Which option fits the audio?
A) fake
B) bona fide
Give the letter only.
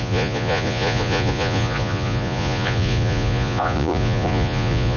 A